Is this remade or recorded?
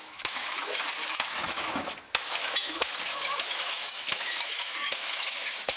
remade